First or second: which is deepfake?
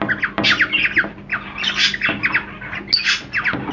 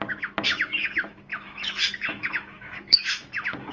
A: second